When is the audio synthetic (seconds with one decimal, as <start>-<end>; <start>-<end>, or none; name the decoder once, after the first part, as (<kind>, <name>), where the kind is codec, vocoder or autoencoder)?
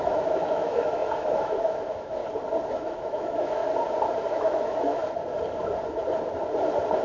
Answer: 0.0-2.2 (autoencoder, DAC-VAE); 2.7-3.6; 4.3-5.0